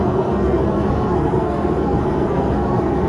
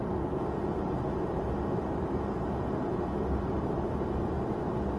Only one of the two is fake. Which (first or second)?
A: first